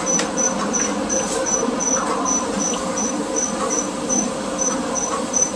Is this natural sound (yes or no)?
yes